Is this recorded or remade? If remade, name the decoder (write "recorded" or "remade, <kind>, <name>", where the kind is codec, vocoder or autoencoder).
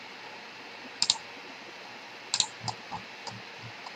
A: recorded